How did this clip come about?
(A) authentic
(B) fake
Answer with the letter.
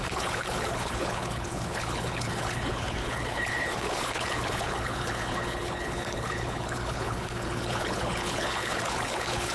B